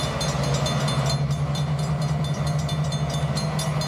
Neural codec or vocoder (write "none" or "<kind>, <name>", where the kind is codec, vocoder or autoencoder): none